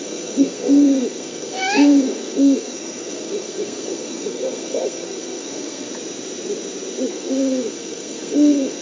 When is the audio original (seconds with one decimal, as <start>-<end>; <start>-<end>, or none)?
5.9-7.1